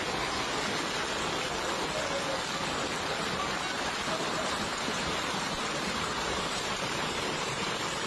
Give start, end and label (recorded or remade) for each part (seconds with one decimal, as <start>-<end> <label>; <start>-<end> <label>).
0.0-4.7 recorded; 4.7-8.1 remade